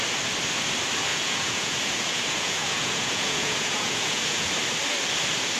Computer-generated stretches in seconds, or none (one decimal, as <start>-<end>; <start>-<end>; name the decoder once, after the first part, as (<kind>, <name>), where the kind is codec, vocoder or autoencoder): 1.1-4.5 (vocoder, Vocos)